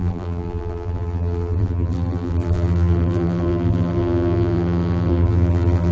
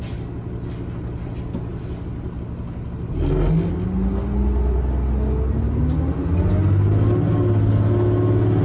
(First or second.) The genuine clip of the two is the second